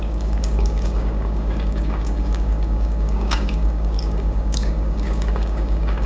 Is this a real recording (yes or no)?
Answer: no